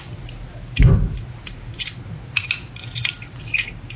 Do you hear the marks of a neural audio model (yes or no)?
no